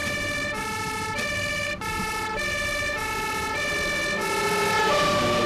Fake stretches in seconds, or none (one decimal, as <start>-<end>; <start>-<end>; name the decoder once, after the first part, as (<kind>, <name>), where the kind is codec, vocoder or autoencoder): 0.0-3.3 (vocoder, BigVGAN v2)